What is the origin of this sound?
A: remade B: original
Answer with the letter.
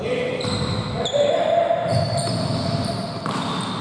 B